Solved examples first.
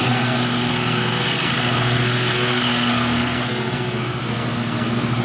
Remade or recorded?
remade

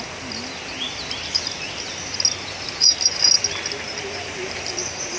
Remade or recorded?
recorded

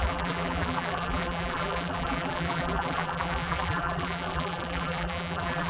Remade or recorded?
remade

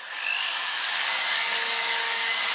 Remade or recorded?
remade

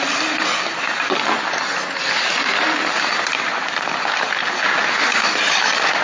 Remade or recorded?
recorded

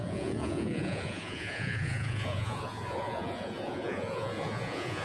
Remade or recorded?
remade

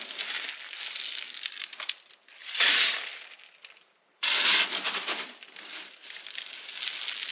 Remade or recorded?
recorded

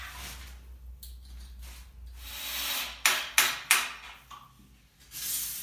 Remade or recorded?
recorded